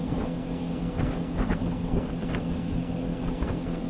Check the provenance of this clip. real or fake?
fake